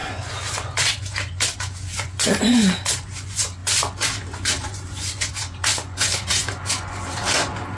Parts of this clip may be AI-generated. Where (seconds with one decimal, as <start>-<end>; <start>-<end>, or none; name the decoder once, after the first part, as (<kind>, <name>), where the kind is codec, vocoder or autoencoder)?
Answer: 0.0-7.8 (vocoder, Vocos)